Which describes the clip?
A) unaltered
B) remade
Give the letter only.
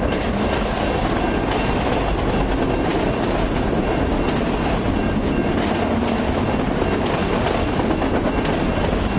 A